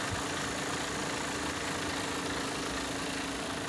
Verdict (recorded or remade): recorded